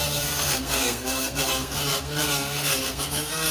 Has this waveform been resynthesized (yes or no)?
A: yes